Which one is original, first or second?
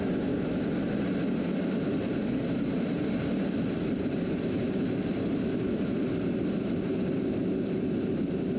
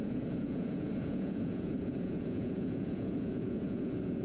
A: first